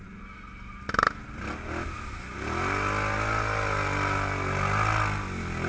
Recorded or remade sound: recorded